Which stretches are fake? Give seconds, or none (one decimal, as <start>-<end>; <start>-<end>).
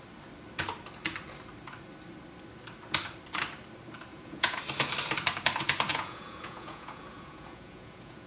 4.1-4.6; 5.9-8.3